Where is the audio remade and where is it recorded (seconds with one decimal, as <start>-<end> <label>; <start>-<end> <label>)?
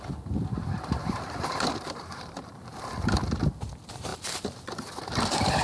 0.0-1.0 recorded; 1.0-2.8 remade; 2.8-4.1 recorded; 4.1-5.0 remade; 5.0-5.6 recorded